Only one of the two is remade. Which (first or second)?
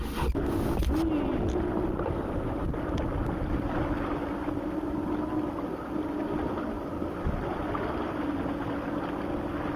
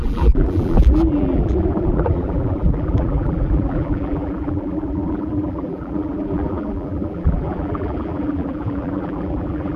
second